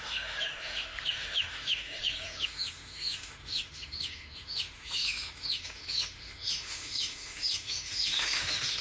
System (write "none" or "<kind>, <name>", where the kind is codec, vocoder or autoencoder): autoencoder, DAC-VAE